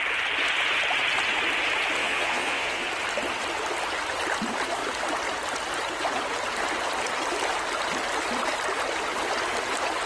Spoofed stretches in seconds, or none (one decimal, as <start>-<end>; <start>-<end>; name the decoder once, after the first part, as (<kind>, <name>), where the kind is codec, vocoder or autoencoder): 2.0-2.9 (vocoder, Vocos)